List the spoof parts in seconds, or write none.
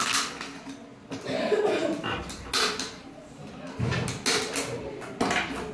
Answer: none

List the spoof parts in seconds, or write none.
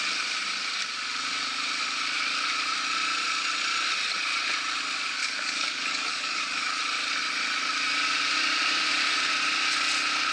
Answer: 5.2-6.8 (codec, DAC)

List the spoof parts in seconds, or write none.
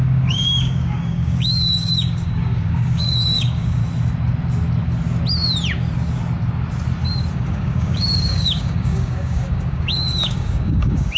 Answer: 0.0-3.8 (codec, DAC); 7.3-11.2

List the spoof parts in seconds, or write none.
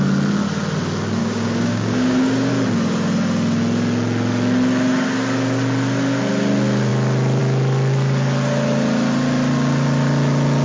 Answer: 1.2-2.5 (codec, DAC)